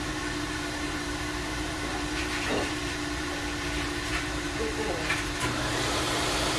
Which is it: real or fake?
fake